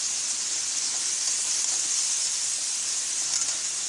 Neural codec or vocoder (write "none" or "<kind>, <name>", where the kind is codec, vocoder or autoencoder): none